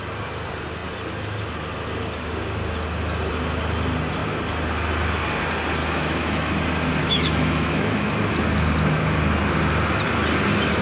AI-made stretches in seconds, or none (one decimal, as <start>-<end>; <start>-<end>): 5.8-6.5; 7.0-8.1